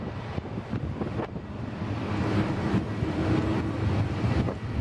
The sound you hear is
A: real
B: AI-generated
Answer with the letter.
B